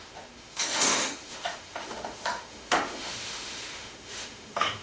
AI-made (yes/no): yes